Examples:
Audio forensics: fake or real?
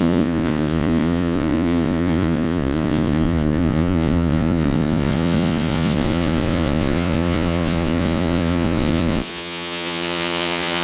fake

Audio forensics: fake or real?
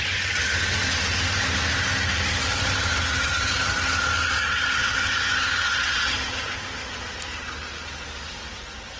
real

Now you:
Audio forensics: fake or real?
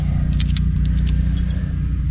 real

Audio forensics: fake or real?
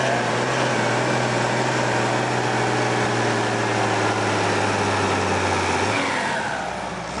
real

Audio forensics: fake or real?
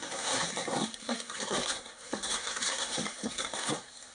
fake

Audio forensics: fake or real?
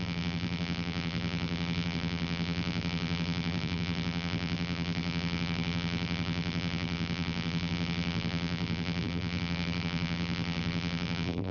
fake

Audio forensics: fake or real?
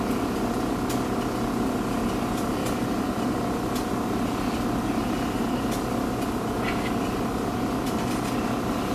real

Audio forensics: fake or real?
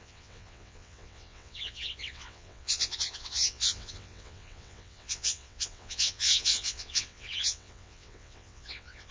fake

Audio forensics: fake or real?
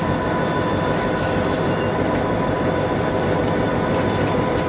real